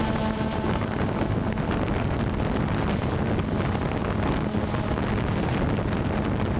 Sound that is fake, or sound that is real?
real